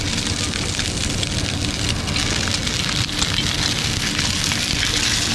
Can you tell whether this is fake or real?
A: real